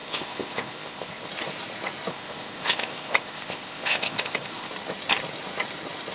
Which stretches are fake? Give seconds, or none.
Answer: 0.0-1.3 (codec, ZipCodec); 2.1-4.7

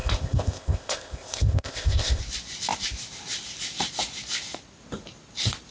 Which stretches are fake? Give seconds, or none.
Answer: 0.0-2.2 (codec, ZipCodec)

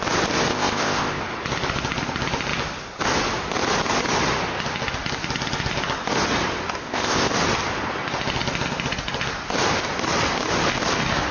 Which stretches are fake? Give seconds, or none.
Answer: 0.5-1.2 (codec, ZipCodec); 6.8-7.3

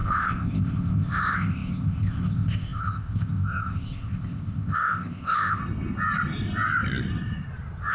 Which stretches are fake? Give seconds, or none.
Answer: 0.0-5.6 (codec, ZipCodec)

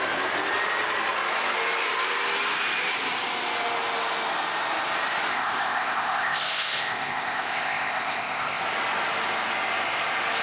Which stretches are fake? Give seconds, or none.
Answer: 5.3-8.6 (codec, ZipCodec)

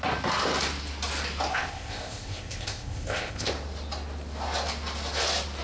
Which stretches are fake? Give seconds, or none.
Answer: 1.5-3.5 (codec, ZipCodec)

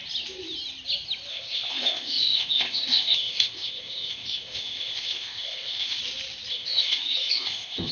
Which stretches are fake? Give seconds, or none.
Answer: 1.3-6.0 (codec, ZipCodec); 6.5-7.9

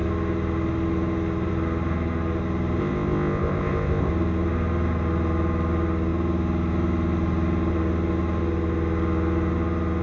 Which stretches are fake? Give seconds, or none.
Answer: 2.8-4.1 (codec, ZipCodec)